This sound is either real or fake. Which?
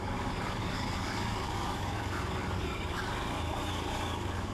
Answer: fake